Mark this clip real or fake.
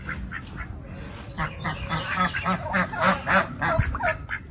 real